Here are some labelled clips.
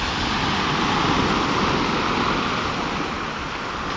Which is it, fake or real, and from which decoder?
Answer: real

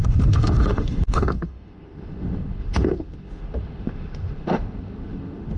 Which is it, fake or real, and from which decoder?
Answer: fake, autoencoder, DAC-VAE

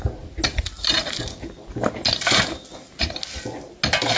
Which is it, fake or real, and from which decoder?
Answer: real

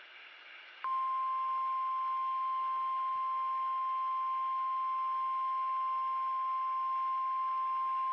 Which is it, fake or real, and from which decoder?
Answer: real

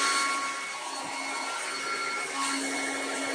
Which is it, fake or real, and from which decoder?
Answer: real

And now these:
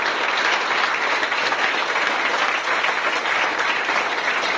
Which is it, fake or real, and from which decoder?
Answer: real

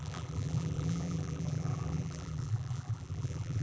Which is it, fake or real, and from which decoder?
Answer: fake, vocoder, BigVGAN v2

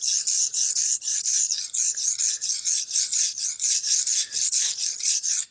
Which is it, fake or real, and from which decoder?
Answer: real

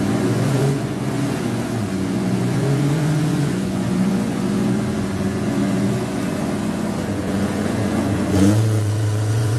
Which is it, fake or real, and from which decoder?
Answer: fake, vocoder, Vocos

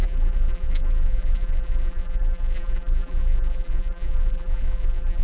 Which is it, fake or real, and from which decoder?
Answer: fake, vocoder, BigVGAN v2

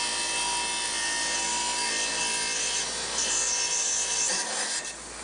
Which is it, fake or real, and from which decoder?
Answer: real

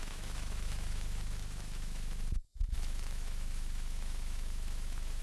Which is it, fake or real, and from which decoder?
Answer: fake, autoencoder, DAC-VAE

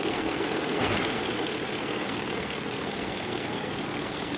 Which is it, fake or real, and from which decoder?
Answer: fake, codec, SNAC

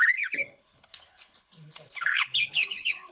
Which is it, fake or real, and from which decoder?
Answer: fake, codec, HILCodec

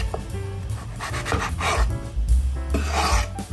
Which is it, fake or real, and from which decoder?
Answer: real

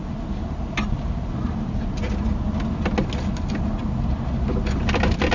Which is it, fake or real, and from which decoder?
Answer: real